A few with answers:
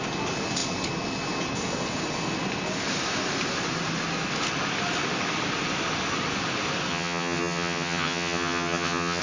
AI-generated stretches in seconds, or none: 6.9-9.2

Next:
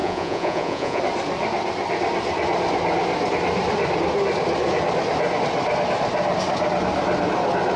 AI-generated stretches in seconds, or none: 0.0-1.0

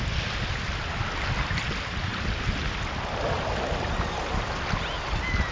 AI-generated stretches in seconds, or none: none

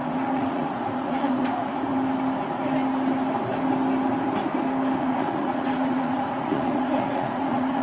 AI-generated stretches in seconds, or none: 0.0-1.9; 5.0-7.8

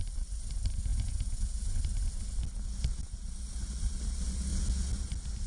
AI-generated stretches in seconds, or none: 0.9-1.7

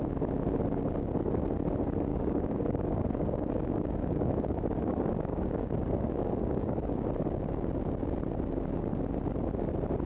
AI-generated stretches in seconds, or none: 2.1-7.0

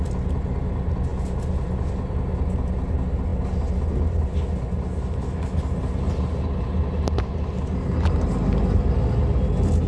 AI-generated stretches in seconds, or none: none